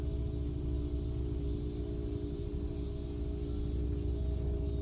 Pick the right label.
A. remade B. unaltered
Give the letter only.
B